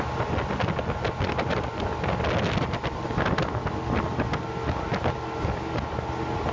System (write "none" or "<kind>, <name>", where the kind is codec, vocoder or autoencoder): none